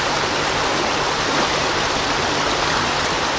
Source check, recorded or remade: recorded